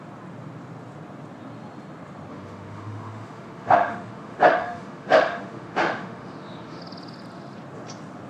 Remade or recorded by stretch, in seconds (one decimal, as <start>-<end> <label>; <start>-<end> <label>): 0.0-2.3 recorded; 2.3-6.8 remade; 6.8-8.3 recorded